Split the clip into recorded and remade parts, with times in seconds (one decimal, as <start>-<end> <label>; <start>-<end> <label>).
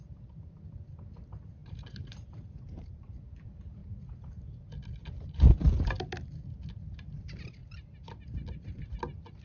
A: 0.0-1.6 recorded; 1.6-3.1 remade; 3.1-7.6 recorded; 7.6-9.0 remade; 9.0-9.4 recorded